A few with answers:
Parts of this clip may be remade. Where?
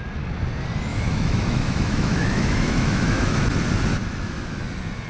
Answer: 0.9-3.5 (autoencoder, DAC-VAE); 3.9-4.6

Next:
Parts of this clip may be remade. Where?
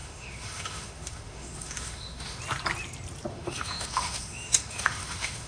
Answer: 0.0-2.4 (autoencoder, DAC-VAE); 3.3-5.5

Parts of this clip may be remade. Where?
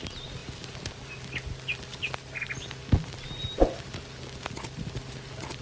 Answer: none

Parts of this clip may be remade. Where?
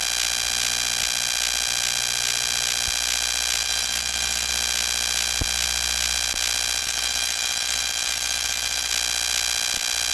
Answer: 3.6-4.5 (autoencoder, DAC-VAE); 6.8-8.9